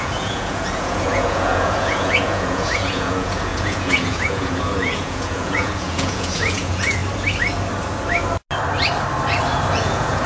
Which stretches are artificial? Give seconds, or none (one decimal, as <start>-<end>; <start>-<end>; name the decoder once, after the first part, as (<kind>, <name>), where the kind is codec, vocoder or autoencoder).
0.0-7.0 (vocoder, Vocos); 9.7-10.3